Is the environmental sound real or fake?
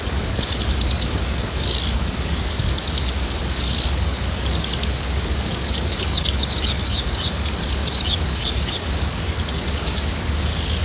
fake